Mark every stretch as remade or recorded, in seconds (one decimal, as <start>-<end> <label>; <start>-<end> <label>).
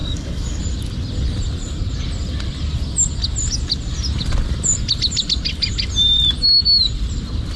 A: 0.0-0.6 remade; 0.6-7.6 recorded